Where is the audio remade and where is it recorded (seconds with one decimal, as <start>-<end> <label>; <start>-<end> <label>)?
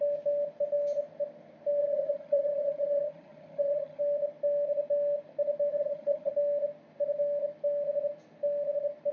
0.0-1.8 recorded; 1.8-4.0 remade; 4.0-5.7 recorded; 5.7-6.3 remade; 6.3-9.1 recorded